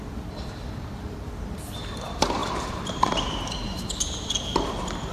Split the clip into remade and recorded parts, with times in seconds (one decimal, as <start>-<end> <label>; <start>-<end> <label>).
0.0-2.4 recorded; 2.4-4.6 remade; 4.6-5.1 recorded